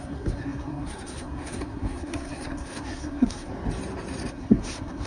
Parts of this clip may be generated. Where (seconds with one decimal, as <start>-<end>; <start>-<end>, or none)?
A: 0.0-3.5; 4.3-5.1